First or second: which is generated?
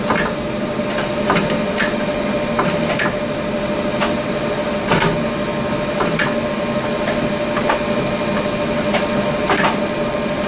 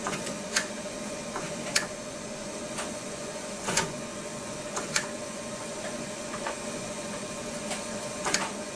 second